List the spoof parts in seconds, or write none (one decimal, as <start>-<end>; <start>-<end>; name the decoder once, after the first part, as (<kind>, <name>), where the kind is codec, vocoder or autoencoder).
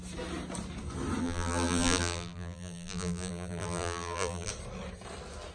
1.2-4.5 (vocoder, BigVGAN v2)